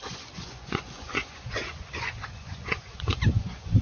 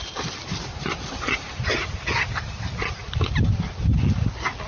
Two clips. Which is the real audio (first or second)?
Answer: second